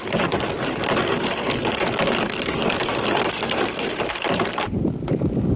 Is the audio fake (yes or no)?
yes